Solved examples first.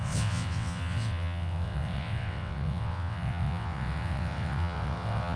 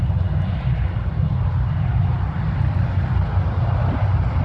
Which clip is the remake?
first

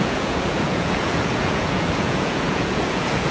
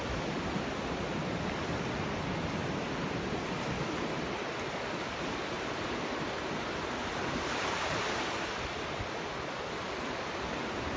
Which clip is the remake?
first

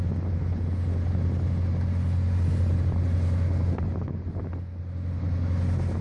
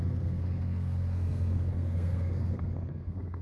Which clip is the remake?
second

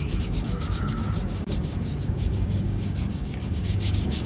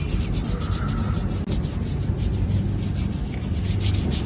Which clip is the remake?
first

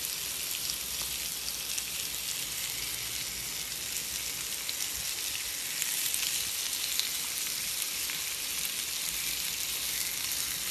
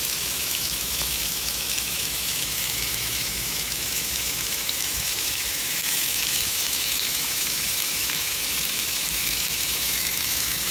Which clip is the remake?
second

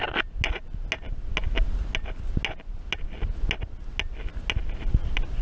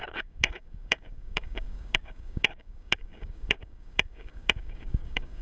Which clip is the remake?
second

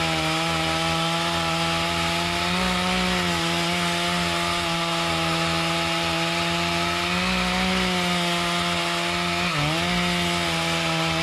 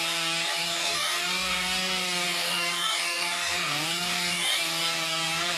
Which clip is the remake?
second